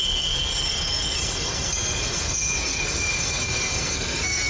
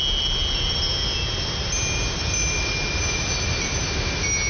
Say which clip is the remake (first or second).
first